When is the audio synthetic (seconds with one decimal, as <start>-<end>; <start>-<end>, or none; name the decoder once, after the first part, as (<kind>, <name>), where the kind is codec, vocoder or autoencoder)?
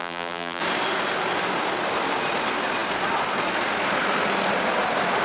0.0-0.6 (vocoder, BigVGAN v2)